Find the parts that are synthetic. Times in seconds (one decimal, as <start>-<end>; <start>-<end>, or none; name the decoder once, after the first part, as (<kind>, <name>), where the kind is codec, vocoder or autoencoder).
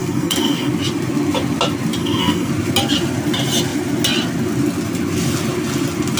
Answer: 0.0-0.7 (codec, SNAC); 2.0-2.5